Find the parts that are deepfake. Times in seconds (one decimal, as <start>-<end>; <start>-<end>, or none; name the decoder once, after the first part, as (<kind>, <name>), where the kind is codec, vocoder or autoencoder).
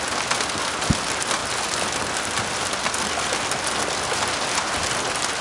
none